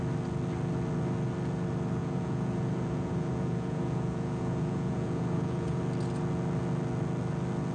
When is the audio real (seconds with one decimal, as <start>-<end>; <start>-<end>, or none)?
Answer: 0.0-2.0; 5.8-7.7